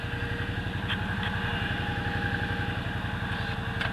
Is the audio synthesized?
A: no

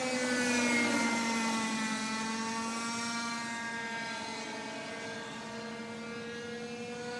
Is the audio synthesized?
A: no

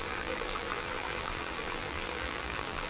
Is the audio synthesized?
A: yes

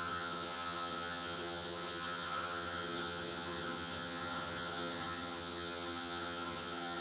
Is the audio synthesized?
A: yes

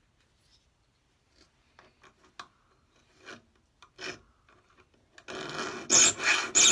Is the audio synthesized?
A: no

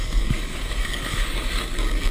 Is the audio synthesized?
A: yes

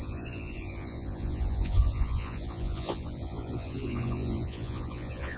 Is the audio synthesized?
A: yes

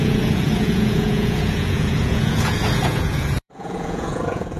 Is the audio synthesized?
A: yes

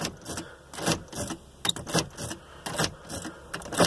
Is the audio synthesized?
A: no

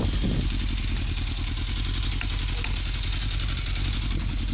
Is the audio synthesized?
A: no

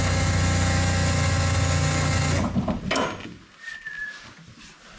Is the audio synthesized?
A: no